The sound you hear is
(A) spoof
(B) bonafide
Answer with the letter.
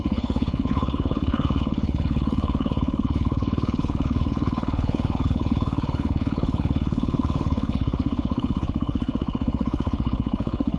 A